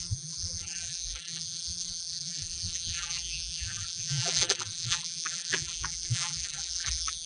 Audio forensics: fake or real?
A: fake